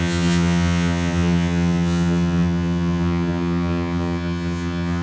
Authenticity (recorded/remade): remade